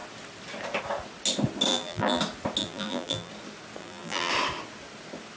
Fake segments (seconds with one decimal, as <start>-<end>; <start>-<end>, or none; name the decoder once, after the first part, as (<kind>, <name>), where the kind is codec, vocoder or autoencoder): 1.7-2.2 (vocoder, BigVGAN v2); 2.6-3.3; 3.8-4.3